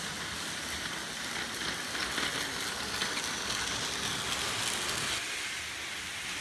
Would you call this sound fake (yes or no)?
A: no